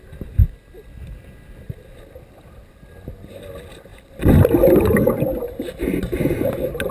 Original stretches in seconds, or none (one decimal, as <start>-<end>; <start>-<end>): 0.0-6.9